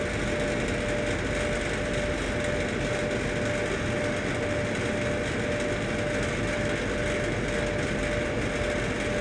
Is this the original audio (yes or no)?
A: yes